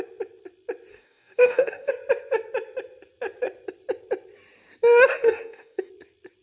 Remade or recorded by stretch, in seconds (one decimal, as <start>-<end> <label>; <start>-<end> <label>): 0.0-0.9 recorded; 0.9-1.9 remade; 1.9-5.2 recorded; 5.2-5.9 remade; 5.9-6.4 recorded